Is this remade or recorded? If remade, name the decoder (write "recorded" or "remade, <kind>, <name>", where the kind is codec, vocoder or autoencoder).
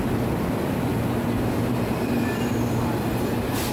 recorded